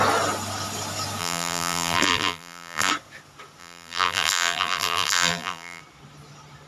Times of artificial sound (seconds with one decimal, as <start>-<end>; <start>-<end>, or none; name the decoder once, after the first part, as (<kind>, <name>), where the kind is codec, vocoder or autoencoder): 1.2-2.9 (vocoder, BigVGAN v2); 3.6-5.8